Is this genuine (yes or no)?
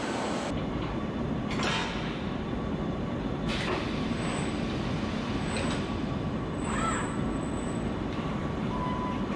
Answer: yes